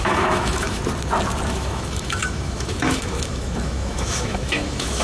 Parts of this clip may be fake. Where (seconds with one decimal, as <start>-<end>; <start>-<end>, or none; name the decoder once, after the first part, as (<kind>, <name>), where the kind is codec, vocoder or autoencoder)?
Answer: 0.0-0.8 (autoencoder, DAC-VAE); 1.5-5.0